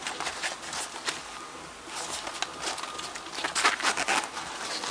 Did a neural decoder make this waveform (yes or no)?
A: no